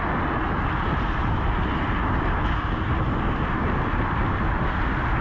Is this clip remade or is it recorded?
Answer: recorded